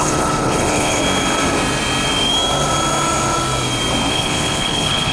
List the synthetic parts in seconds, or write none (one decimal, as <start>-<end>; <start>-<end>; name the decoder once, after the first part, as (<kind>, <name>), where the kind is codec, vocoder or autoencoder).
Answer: 0.0-1.0 (codec, HILCodec); 4.1-5.1